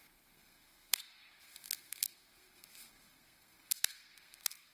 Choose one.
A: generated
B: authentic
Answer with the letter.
A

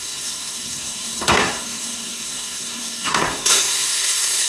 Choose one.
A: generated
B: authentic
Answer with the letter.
A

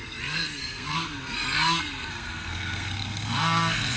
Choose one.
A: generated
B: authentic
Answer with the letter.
A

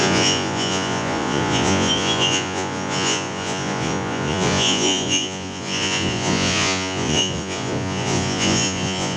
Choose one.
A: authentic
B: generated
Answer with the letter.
B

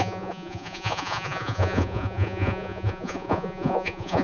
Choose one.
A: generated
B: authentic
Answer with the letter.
A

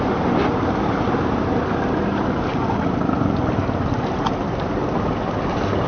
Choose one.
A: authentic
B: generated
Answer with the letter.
A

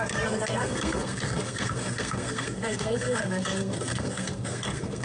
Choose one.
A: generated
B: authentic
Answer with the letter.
A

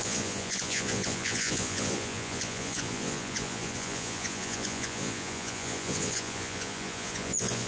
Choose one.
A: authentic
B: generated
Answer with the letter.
B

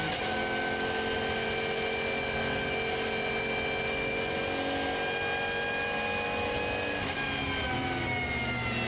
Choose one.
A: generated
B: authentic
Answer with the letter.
B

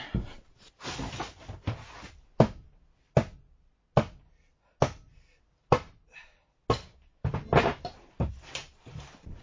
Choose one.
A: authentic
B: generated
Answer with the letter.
A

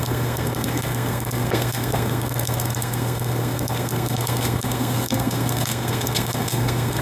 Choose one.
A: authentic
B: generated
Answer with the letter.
B